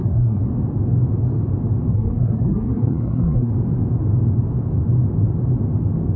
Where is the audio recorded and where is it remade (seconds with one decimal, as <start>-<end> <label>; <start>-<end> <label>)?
0.0-0.5 remade; 0.5-1.9 recorded; 1.9-3.5 remade; 3.5-6.2 recorded